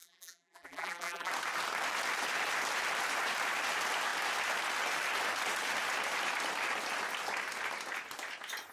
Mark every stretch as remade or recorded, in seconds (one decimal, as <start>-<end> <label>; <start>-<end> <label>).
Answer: 0.0-1.3 remade; 1.3-8.7 recorded